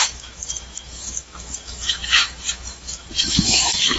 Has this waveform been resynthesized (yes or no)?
yes